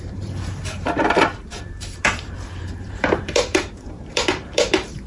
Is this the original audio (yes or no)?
no